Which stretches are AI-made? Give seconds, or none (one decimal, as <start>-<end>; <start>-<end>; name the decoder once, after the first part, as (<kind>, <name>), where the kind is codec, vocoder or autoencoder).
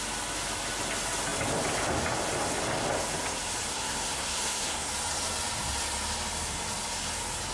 3.7-4.9 (codec, SNAC)